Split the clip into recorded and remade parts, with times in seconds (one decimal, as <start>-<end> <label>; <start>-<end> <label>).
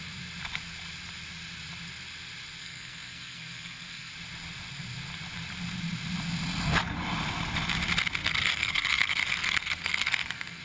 0.0-2.6 recorded; 2.6-4.1 remade; 4.1-8.2 recorded; 8.2-10.6 remade